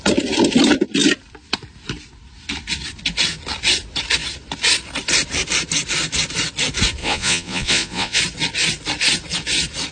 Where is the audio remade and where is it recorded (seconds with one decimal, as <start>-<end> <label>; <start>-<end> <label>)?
0.0-7.0 recorded; 7.0-8.2 remade; 8.2-9.9 recorded

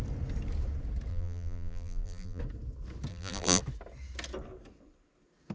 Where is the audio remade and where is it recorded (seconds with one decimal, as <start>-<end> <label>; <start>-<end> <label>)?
0.0-1.1 recorded; 1.1-2.4 remade; 2.4-3.1 recorded; 3.1-3.6 remade; 3.6-5.5 recorded

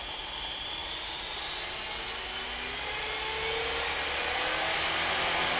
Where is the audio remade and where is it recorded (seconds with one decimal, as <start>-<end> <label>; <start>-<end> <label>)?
0.0-5.6 recorded